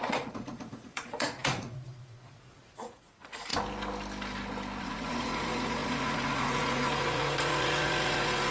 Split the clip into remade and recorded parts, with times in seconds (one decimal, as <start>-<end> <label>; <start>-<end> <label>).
0.0-3.5 remade; 3.5-4.8 recorded; 4.8-8.5 remade